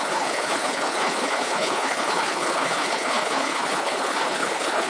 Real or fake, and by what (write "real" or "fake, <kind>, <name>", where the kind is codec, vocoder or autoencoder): fake, codec, HILCodec